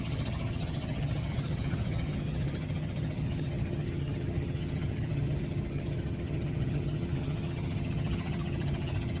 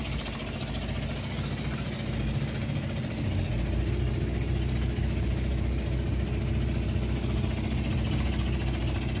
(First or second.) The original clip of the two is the second